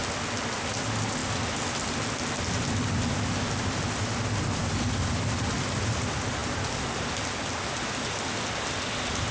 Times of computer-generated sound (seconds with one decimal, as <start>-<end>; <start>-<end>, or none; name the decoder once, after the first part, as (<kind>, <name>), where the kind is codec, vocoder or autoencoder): none